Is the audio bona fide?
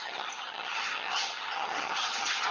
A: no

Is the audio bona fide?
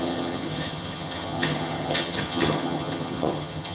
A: no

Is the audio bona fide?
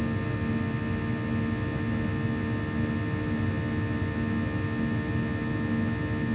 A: yes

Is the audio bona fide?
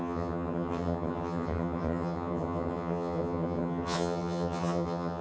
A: no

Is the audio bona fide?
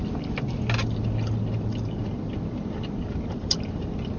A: yes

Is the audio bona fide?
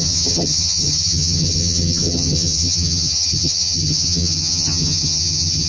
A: no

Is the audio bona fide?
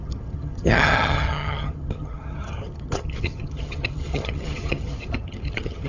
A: no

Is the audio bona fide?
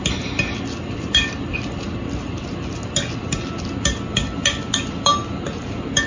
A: yes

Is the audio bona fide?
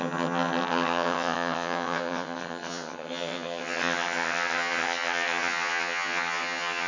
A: no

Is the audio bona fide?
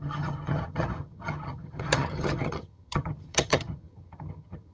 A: no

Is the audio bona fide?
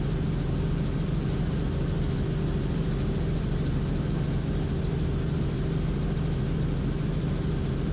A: yes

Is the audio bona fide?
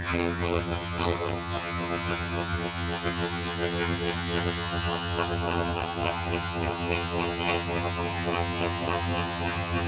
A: no